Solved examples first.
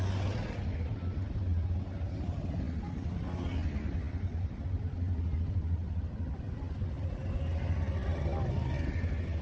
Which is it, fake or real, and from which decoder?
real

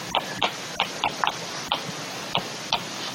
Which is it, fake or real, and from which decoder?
real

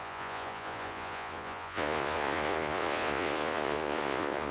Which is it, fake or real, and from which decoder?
fake, vocoder, Vocos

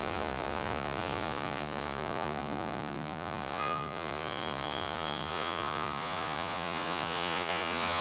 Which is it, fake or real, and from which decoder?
fake, vocoder, Vocos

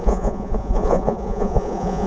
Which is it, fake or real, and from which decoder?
fake, vocoder, Vocos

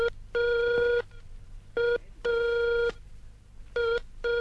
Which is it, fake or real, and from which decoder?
real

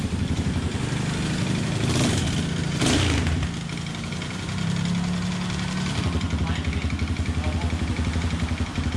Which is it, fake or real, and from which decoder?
real